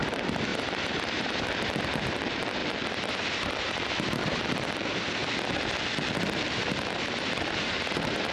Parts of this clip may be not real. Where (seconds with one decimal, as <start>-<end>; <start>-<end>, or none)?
0.0-5.2; 6.4-8.3